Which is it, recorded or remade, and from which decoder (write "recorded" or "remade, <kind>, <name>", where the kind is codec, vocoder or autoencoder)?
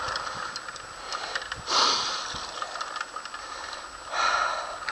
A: recorded